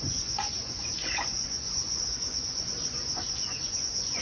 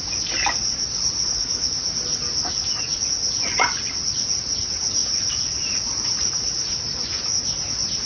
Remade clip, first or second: first